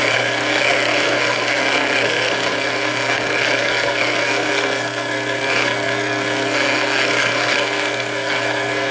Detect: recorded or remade remade